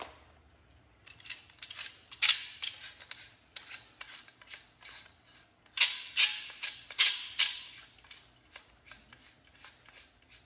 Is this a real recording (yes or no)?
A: yes